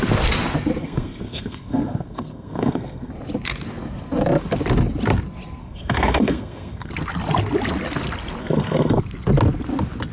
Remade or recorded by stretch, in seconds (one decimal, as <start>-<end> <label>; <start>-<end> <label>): 0.0-0.8 recorded; 0.8-3.1 remade; 3.1-5.6 recorded; 5.6-6.9 remade; 6.9-8.4 recorded; 8.4-9.0 remade; 9.0-10.1 recorded